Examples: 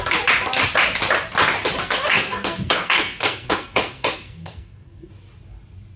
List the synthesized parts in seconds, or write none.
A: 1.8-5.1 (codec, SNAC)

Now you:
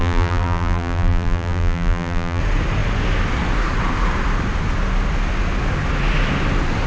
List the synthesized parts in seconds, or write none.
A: 0.0-2.4 (vocoder, BigVGAN v2)

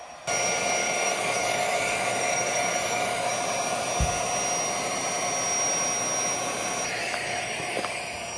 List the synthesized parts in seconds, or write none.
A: 0.8-3.3 (codec, DAC); 7.0-8.0